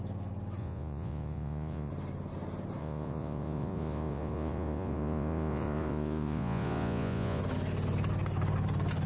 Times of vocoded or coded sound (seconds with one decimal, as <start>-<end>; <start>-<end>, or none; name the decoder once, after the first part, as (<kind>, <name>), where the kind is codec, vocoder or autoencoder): 0.6-1.9 (vocoder, Vocos); 2.8-7.4